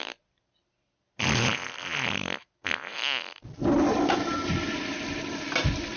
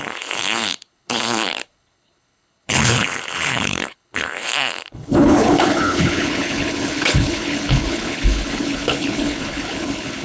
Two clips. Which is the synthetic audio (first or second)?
second